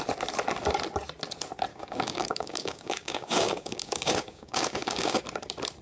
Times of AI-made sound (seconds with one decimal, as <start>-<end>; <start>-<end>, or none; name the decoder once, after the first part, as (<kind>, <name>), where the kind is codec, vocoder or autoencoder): 1.7-5.2 (codec, DAC)